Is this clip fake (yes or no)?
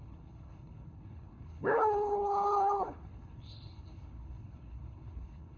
yes